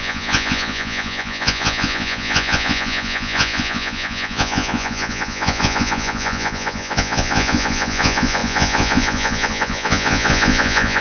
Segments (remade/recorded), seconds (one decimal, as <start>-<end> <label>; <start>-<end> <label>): 0.0-11.0 remade